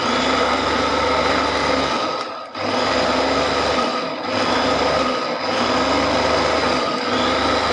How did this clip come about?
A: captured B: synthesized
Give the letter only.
A